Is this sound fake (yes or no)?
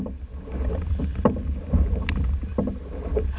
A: no